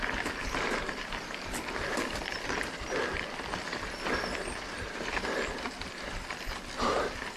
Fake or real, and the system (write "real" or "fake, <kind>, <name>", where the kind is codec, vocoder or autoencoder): fake, vocoder, BigVGAN v2